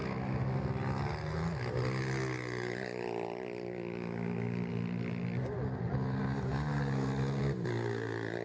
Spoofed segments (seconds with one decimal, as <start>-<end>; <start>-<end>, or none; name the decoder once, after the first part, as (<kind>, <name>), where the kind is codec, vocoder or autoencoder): none